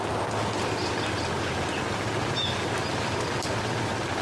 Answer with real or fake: real